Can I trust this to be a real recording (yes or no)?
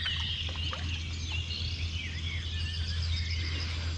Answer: yes